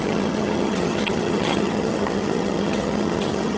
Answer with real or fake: fake